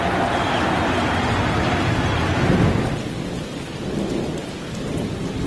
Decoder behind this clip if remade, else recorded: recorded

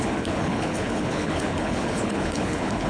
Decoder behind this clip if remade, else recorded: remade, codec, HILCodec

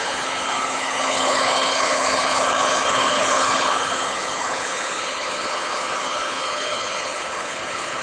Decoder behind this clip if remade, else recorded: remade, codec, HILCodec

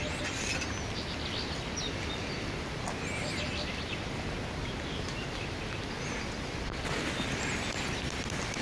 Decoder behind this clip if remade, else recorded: recorded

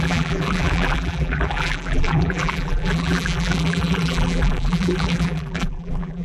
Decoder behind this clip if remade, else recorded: remade, vocoder, BigVGAN v2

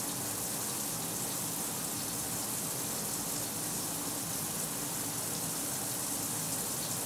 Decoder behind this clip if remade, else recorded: recorded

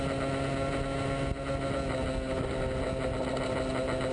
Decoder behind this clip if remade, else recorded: recorded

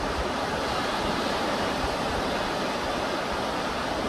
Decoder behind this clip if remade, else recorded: recorded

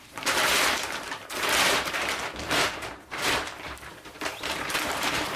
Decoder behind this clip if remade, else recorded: remade, vocoder, BigVGAN v2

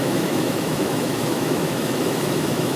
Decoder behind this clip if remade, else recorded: remade, autoencoder, DAC-VAE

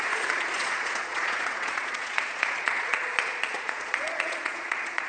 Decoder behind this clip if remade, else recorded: remade, vocoder, Vocos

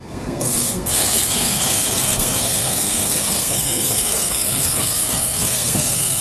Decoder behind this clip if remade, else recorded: remade, codec, SNAC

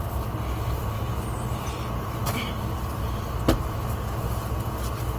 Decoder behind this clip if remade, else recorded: recorded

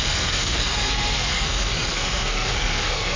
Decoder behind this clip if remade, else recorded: remade, codec, SNAC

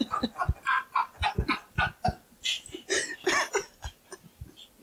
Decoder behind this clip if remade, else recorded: recorded